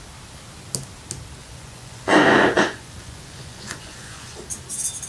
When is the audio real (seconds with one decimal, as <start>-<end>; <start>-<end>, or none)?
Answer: 0.0-1.4; 4.4-5.1